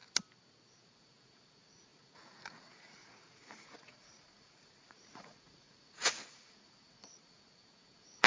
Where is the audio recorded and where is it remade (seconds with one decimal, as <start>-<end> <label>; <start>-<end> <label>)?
0.0-0.7 recorded; 0.7-8.3 remade